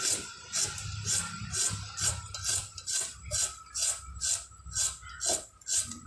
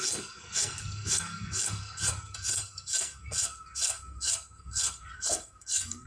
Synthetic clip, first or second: second